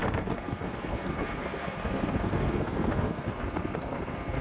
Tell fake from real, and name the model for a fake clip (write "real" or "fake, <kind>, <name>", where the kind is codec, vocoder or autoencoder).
fake, codec, SNAC